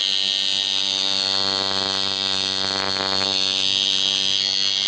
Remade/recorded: recorded